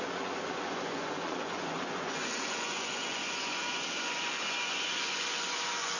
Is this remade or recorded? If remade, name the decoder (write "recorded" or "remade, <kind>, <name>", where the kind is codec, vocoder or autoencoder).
remade, vocoder, Vocos